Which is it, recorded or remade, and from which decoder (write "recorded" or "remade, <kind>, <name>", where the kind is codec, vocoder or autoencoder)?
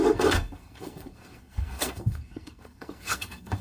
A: remade, codec, SNAC